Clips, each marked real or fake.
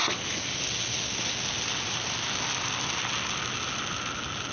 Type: real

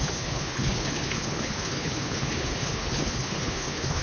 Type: fake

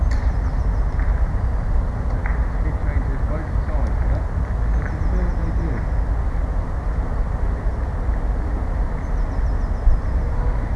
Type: real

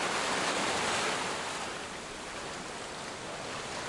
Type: real